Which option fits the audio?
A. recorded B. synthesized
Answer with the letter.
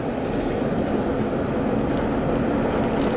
A